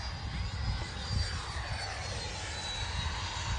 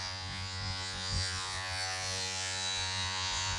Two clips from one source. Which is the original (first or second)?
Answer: first